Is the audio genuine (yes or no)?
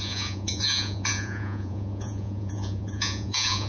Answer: no